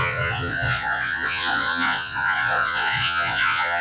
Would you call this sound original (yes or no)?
no